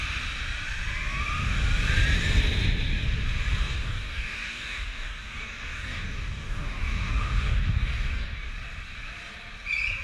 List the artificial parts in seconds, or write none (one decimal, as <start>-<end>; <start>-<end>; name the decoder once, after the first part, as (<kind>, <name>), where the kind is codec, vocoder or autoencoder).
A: 3.6-8.5 (codec, DAC)